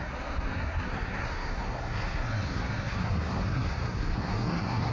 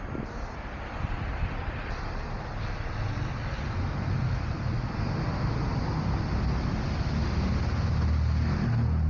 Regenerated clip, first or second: first